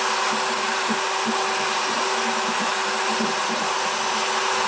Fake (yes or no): no